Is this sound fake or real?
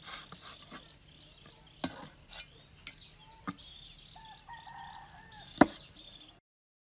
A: real